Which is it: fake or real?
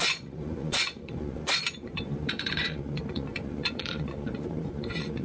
fake